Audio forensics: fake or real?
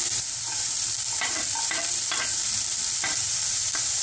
fake